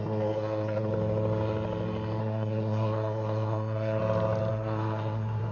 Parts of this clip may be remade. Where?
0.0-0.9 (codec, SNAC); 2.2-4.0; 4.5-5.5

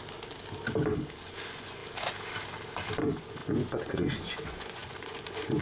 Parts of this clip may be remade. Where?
1.2-1.8 (vocoder, Vocos); 3.0-5.6

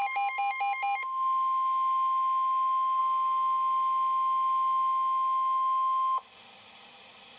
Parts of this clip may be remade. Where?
none

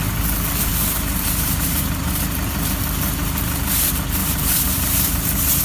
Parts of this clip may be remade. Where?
0.7-2.2 (vocoder, BigVGAN v2); 3.2-3.7; 4.2-5.6

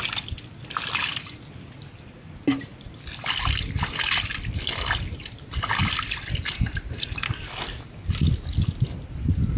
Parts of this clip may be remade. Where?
none

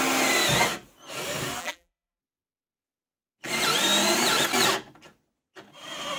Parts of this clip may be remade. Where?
1.6-2.2 (vocoder, BigVGAN v2)

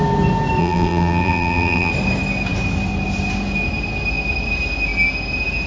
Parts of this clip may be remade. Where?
0.6-1.9 (vocoder, BigVGAN v2)

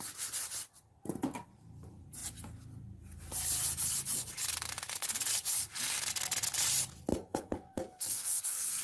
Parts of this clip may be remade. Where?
7.1-8.8 (codec, SNAC)